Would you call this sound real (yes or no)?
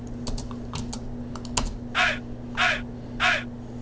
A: yes